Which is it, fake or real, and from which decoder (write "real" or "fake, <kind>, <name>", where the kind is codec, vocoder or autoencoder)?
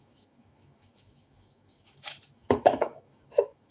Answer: fake, autoencoder, DAC-VAE